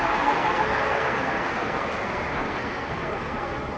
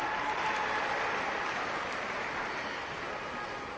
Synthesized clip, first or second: first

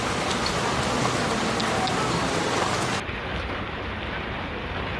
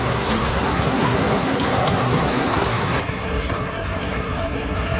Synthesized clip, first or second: second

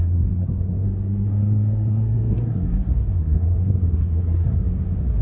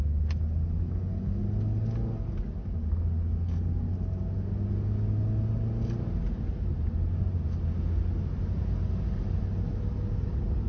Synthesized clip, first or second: first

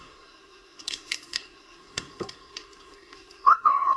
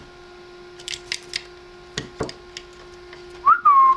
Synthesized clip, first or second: first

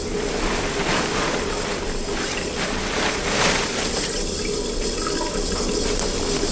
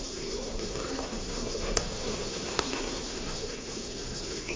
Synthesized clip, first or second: second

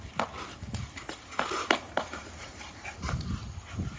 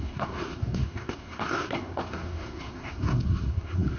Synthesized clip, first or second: second